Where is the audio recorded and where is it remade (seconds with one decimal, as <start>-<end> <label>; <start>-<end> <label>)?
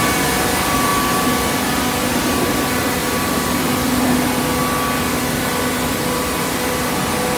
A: 0.0-3.0 recorded; 3.0-4.1 remade; 4.1-7.4 recorded